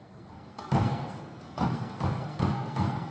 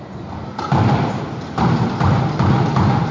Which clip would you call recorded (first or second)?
second